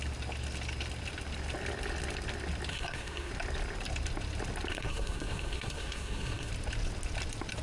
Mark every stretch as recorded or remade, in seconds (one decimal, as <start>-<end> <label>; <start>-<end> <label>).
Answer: 0.0-2.7 recorded; 2.7-3.3 remade; 3.3-4.7 recorded; 4.7-6.5 remade; 6.5-7.6 recorded